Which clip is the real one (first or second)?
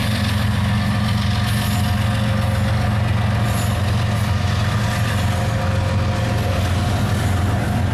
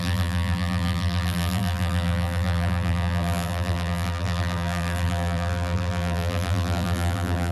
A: first